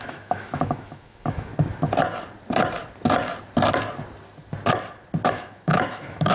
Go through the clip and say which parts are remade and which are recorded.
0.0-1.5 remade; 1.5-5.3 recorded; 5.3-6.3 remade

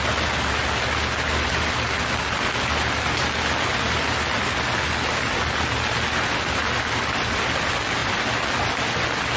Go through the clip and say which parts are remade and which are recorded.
0.0-9.4 recorded

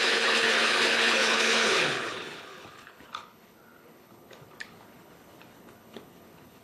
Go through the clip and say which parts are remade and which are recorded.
0.0-6.6 remade

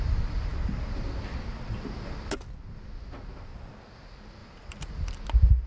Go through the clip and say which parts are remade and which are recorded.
0.0-4.4 recorded; 4.4-5.1 remade; 5.1-5.7 recorded

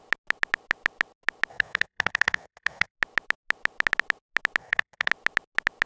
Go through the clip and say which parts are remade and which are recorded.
0.0-1.5 recorded; 1.5-2.9 remade; 2.9-4.6 recorded; 4.6-5.1 remade; 5.1-5.9 recorded